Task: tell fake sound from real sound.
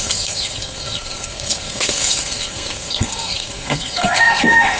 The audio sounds fake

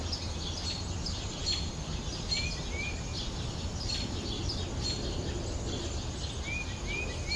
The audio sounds real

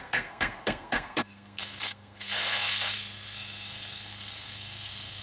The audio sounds fake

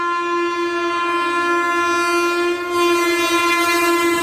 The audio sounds real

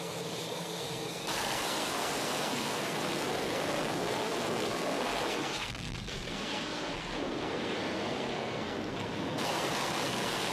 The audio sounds fake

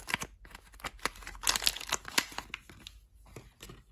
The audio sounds real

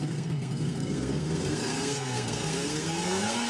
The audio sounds fake